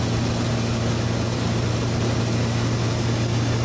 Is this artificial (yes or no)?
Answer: no